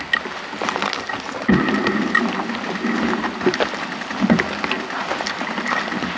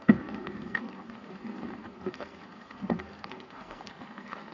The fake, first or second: second